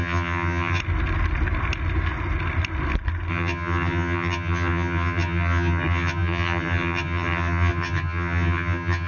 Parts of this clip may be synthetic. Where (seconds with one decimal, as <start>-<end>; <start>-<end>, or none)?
0.0-0.8; 3.3-9.1